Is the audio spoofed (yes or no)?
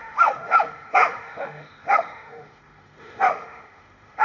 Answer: yes